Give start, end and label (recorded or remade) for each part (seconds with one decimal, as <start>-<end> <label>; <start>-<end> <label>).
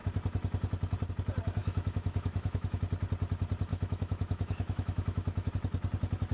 0.0-1.6 recorded; 1.6-2.8 remade; 2.8-3.7 recorded; 3.7-5.5 remade; 5.5-6.3 recorded